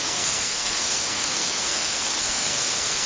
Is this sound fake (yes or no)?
yes